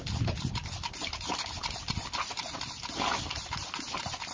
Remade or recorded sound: recorded